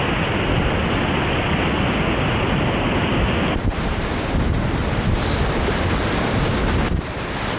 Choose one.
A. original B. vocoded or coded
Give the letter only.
A